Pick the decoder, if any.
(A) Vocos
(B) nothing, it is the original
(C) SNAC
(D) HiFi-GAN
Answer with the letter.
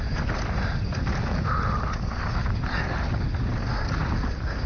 B